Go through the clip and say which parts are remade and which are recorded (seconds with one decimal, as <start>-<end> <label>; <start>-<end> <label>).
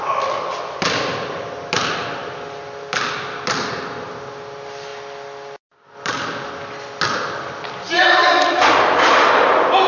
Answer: 0.0-9.9 recorded